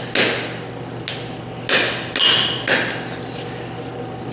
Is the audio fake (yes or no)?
no